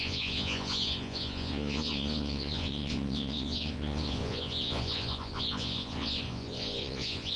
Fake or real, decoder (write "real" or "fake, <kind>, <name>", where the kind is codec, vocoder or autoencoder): fake, vocoder, Vocos